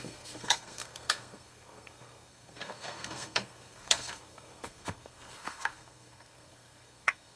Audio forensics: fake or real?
fake